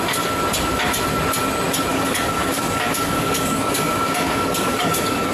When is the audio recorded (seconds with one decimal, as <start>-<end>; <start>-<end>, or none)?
0.0-1.9